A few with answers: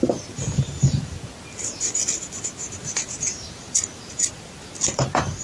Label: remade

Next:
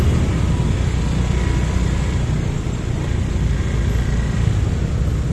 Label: recorded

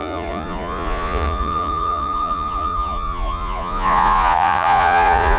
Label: remade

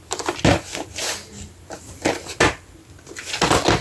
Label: recorded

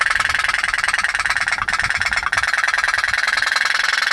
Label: recorded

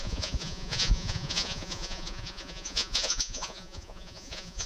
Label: remade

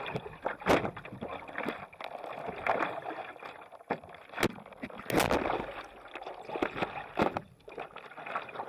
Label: recorded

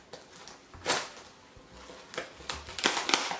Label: recorded